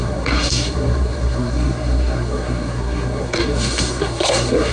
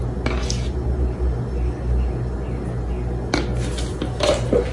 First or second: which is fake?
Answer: first